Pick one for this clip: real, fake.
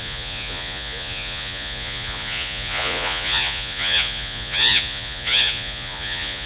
fake